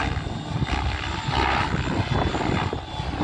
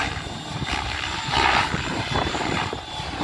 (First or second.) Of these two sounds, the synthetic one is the second